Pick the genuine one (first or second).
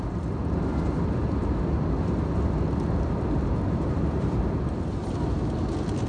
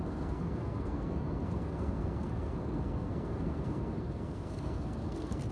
first